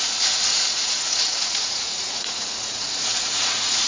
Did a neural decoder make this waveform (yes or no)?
yes